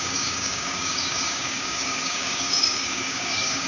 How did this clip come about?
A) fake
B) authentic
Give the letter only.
A